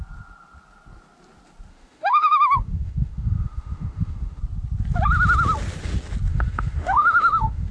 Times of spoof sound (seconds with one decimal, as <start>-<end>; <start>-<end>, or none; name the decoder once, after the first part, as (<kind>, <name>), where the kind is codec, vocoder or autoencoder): 1.7-4.4 (autoencoder, DAC-VAE); 6.3-7.7